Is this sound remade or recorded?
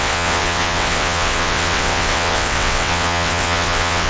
remade